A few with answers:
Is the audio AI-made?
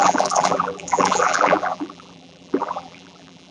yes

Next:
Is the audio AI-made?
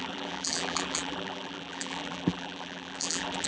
yes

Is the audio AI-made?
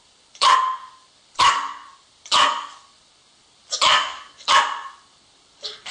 yes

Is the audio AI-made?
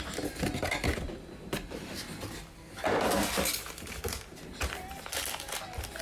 no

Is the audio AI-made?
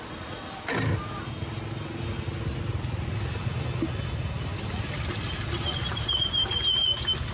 no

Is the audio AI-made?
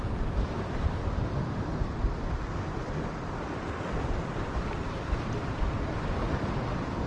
yes